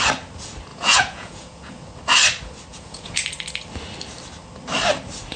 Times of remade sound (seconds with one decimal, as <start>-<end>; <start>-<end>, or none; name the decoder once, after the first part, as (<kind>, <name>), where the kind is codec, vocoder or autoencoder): 0.7-1.8 (vocoder, Vocos); 2.7-3.2